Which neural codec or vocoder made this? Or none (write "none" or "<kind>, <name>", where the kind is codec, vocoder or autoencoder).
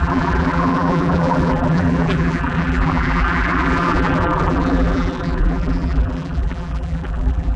vocoder, BigVGAN v2